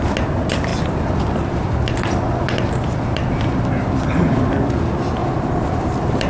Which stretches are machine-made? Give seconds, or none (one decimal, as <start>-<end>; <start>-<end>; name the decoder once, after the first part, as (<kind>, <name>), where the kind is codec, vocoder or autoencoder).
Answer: 0.7-4.5 (vocoder, BigVGAN v2); 5.2-6.3